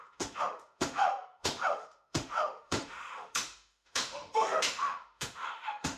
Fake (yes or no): yes